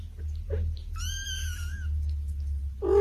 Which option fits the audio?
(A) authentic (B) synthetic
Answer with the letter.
A